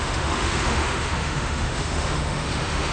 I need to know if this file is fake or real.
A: fake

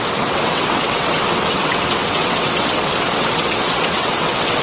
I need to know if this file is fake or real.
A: fake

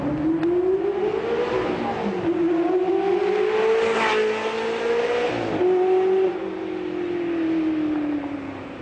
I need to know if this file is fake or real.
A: real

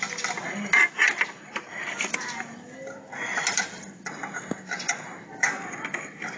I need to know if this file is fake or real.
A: real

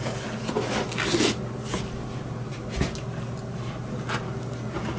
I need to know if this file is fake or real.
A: real